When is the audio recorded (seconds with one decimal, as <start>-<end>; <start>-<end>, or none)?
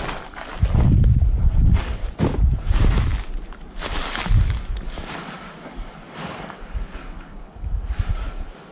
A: 0.5-1.5; 2.0-4.4